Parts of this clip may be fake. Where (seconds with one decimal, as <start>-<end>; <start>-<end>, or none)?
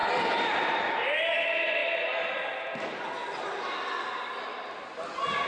none